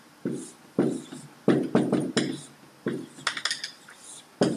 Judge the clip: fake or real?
real